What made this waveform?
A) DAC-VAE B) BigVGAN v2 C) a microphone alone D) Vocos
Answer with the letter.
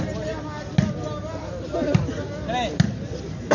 C